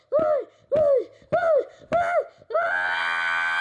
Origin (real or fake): real